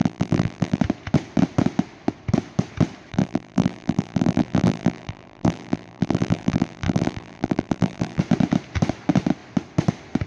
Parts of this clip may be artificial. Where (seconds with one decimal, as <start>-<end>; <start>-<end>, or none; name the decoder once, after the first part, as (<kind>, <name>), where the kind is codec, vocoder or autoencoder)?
0.0-0.8 (vocoder, BigVGAN v2); 3.1-8.2